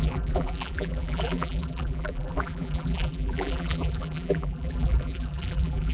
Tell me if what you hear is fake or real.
fake